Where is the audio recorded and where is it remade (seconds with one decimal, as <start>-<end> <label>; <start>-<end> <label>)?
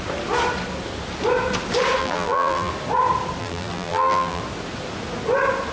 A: 0.0-2.0 recorded; 2.0-2.7 remade; 2.7-3.4 recorded; 3.4-4.4 remade; 4.4-5.7 recorded